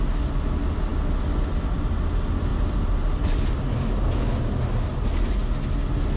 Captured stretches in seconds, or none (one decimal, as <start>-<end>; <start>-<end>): 0.0-6.2